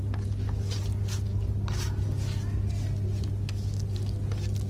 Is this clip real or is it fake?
real